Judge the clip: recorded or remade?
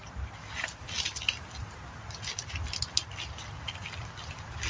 recorded